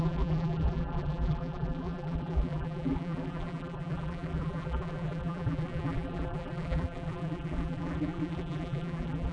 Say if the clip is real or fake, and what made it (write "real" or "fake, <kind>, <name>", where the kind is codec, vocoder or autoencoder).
fake, vocoder, BigVGAN v2